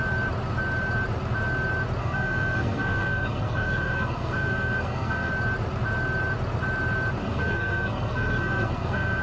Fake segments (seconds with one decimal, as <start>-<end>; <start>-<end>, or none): 2.0-5.3; 7.2-9.2

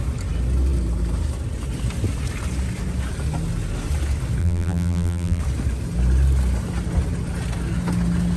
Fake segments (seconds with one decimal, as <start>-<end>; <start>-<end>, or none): 4.4-5.4

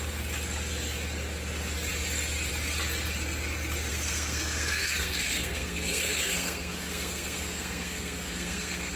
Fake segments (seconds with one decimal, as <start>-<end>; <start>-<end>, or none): 3.9-9.0

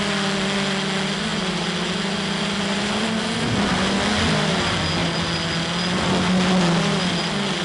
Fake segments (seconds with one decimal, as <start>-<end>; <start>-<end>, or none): none

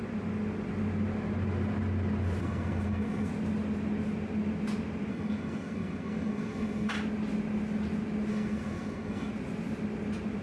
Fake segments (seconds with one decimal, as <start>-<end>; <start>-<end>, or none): 2.4-3.3; 5.1-6.9; 8.3-9.3